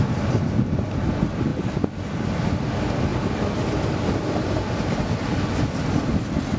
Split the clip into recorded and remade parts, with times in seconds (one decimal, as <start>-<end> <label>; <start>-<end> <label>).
0.0-6.6 recorded